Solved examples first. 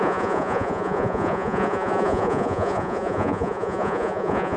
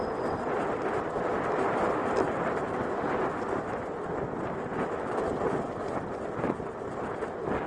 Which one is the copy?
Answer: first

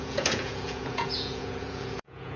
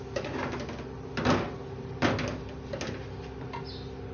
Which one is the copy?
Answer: first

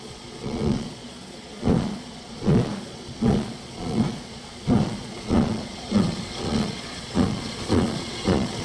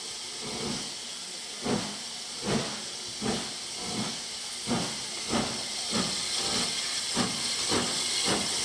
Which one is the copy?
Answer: first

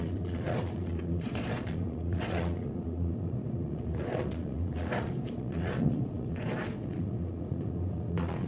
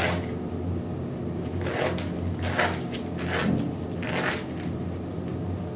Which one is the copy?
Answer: first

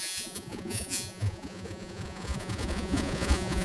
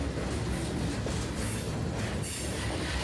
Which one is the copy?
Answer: first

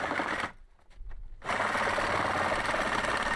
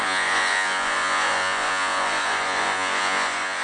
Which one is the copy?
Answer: second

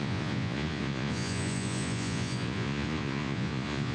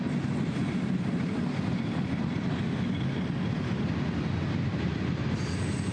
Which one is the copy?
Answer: first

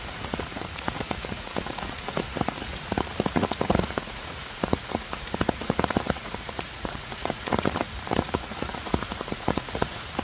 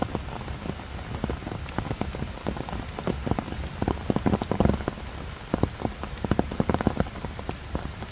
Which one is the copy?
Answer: first